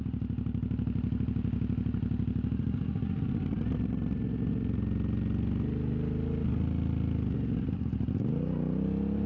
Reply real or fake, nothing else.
real